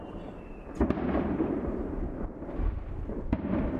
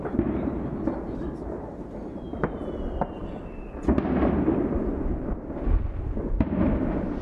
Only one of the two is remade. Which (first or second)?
first